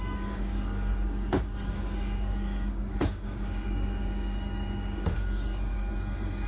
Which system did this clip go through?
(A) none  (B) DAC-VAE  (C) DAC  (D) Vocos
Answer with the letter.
C